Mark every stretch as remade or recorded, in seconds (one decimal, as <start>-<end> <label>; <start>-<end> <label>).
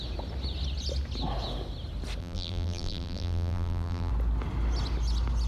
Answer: 0.0-2.2 recorded; 2.2-4.1 remade; 4.1-5.5 recorded